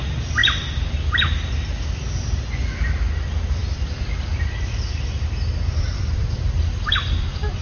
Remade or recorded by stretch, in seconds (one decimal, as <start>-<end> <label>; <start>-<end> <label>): 0.0-7.6 recorded